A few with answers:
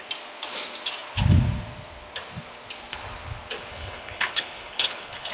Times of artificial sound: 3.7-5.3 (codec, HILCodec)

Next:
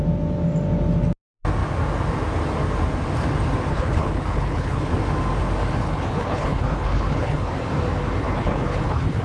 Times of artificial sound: 3.7-4.9 (codec, HILCodec); 5.8-7.5; 8.2-9.2